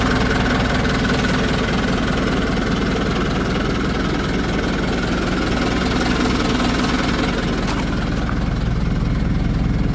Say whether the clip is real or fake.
real